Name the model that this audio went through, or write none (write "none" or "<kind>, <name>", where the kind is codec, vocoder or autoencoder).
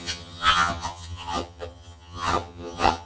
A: vocoder, HiFi-GAN